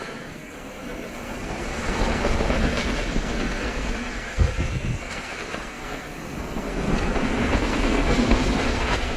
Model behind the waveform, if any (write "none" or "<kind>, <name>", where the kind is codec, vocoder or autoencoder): codec, SNAC